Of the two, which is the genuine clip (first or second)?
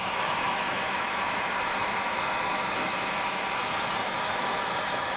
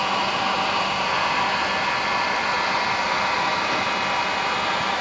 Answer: second